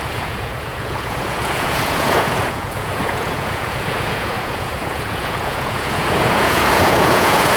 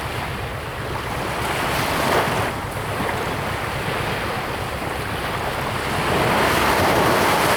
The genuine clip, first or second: second